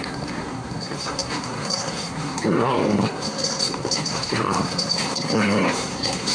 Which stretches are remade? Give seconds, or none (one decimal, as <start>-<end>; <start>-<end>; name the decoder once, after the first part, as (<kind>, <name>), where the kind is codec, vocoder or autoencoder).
0.0-6.3 (codec, SNAC)